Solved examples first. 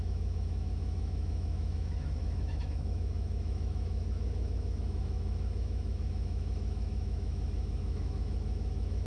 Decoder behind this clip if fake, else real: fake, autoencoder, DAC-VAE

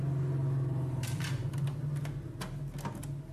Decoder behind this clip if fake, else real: real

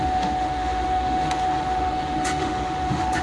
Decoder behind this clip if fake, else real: fake, autoencoder, DAC-VAE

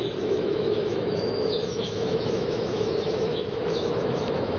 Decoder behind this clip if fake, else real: fake, autoencoder, DAC-VAE